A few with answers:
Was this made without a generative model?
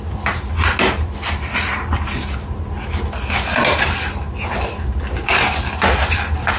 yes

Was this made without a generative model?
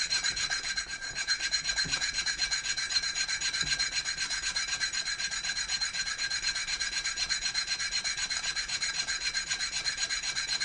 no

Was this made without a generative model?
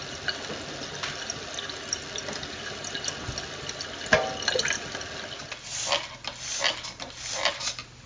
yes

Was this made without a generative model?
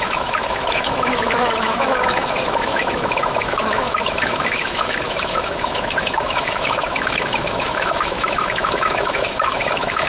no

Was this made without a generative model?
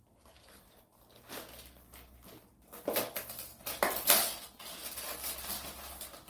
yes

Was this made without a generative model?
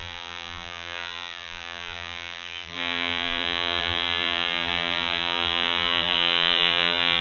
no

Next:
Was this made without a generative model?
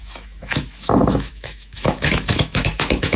no